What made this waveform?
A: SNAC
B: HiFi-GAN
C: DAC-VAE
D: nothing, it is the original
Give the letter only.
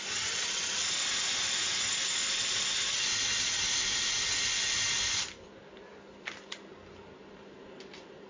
D